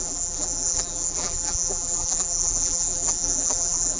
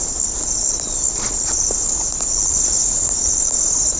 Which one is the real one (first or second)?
second